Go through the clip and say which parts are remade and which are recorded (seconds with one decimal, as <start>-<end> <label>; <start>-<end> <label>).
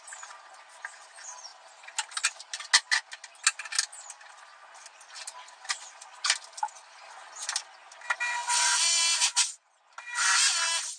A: 0.0-11.0 recorded